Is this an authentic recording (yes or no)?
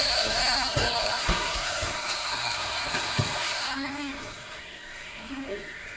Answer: no